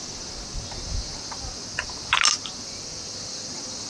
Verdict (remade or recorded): recorded